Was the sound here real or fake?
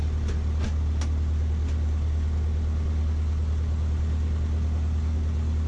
real